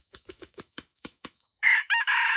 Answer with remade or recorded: remade